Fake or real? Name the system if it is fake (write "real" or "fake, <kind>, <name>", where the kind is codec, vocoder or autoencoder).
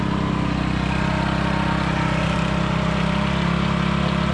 real